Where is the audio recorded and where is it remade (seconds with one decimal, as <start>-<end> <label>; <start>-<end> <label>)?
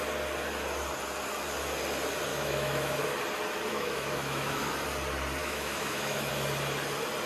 0.0-2.3 recorded; 2.3-3.0 remade; 3.0-3.7 recorded; 3.7-4.7 remade; 4.7-5.4 recorded; 5.4-6.3 remade; 6.3-7.3 recorded